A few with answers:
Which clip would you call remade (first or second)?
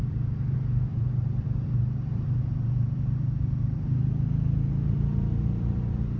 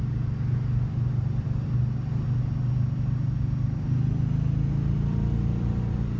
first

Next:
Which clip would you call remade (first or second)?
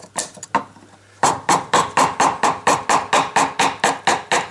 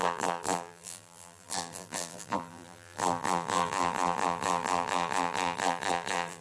second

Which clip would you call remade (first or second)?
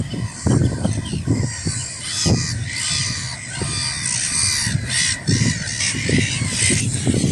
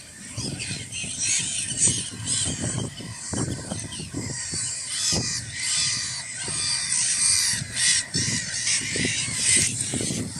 second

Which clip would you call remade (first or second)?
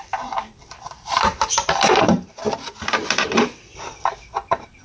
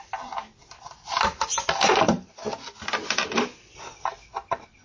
first